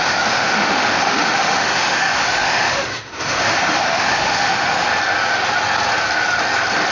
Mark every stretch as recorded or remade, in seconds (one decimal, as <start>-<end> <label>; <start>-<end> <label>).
0.0-4.9 remade; 4.9-6.9 recorded